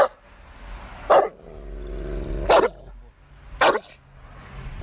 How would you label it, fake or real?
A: real